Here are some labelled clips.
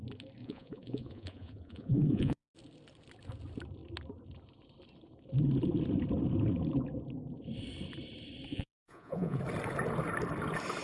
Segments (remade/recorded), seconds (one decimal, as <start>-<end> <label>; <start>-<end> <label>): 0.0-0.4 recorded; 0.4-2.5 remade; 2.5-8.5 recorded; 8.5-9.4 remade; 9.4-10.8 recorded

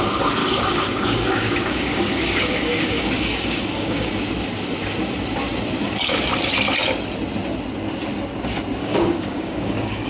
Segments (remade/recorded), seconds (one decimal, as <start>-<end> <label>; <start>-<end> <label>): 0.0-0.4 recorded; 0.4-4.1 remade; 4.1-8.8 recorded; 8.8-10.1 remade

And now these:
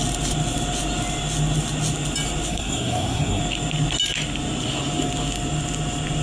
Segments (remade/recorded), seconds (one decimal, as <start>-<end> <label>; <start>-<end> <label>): 0.0-2.5 recorded; 2.5-3.4 remade; 3.4-6.2 recorded

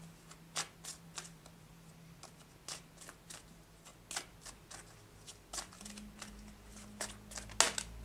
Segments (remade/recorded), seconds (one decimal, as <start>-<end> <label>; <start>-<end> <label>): 0.0-8.0 recorded

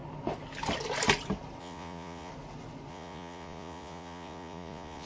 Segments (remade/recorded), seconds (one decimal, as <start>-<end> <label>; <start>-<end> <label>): 0.0-1.6 recorded; 1.6-2.3 remade; 2.3-2.9 recorded; 2.9-5.1 remade